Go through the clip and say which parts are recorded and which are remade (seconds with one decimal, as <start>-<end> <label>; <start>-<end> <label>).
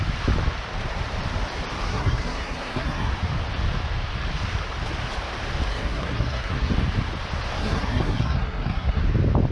0.0-1.9 recorded; 1.9-3.1 remade; 3.1-5.7 recorded; 5.7-6.7 remade; 6.7-7.6 recorded; 7.6-9.0 remade; 9.0-9.5 recorded